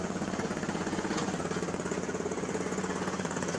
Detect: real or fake fake